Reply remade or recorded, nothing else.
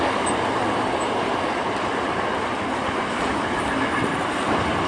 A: recorded